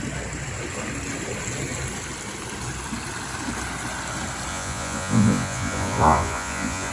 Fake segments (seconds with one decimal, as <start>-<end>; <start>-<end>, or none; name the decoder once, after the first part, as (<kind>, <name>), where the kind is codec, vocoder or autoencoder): 4.5-6.9 (vocoder, Vocos)